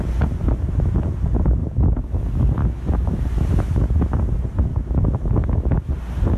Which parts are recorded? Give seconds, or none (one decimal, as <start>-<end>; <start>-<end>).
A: 0.0-1.6; 2.2-2.6; 3.2-4.7; 5.9-6.4